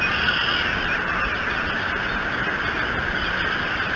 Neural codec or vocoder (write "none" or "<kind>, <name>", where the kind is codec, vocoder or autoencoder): none